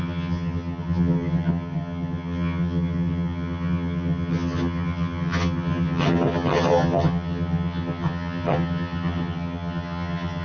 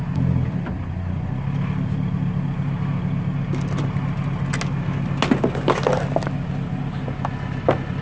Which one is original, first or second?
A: second